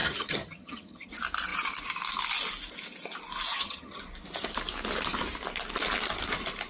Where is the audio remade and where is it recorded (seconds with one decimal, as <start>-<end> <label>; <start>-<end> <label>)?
0.0-1.1 remade; 1.1-3.5 recorded; 3.5-4.0 remade; 4.0-6.7 recorded